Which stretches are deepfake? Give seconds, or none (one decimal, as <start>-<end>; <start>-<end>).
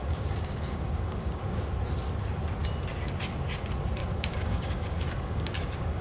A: 0.0-1.7; 4.0-6.0